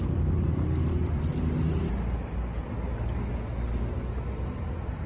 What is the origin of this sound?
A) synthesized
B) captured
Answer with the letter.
B